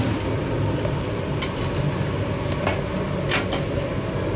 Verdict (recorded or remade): recorded